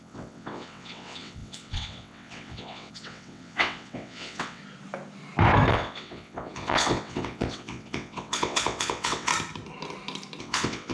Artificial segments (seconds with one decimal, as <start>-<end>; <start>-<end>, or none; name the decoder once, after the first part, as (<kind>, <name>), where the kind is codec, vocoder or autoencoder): 0.0-4.6 (vocoder, WaveNeXt); 5.7-9.3; 10.4-10.9